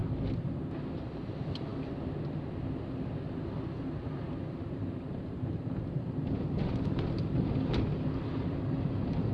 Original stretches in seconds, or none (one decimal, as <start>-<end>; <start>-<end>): 0.0-9.3